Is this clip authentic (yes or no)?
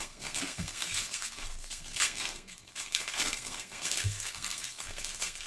no